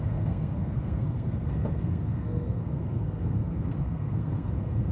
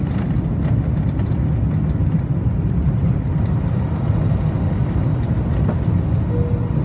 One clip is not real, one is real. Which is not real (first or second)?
first